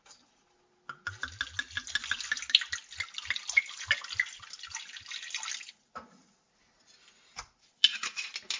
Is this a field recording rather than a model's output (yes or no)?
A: yes